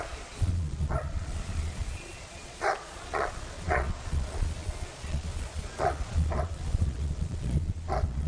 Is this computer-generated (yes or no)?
yes